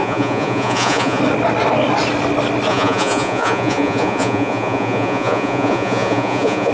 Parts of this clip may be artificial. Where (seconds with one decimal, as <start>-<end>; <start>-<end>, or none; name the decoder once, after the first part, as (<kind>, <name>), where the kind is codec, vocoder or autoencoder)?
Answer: 0.0-1.2 (vocoder, Vocos); 2.7-6.7